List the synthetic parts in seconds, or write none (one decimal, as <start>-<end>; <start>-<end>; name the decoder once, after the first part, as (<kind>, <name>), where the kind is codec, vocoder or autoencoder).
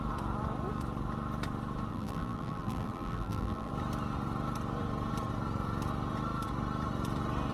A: 1.9-3.7 (vocoder, BigVGAN v2)